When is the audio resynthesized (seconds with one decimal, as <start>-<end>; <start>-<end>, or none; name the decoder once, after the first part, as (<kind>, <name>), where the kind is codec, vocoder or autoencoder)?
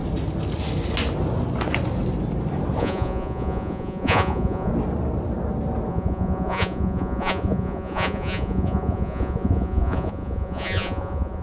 2.8-4.7 (vocoder, Vocos); 5.9-11.4